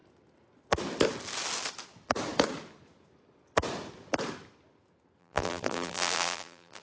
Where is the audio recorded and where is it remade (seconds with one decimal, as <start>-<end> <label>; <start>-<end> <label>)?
0.0-5.2 recorded; 5.2-6.8 remade